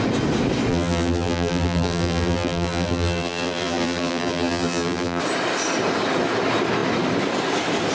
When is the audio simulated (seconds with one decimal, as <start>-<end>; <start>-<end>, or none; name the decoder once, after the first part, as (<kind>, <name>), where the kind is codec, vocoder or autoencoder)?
0.7-5.2 (vocoder, BigVGAN v2)